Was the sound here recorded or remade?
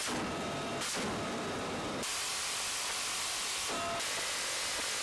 remade